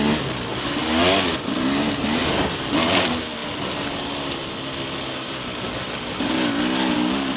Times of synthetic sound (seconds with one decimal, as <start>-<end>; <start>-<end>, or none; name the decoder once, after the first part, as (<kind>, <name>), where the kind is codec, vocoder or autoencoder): none